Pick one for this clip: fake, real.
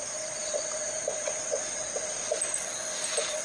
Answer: real